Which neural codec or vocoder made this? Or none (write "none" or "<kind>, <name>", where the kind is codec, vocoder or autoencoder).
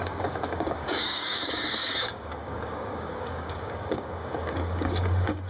codec, DAC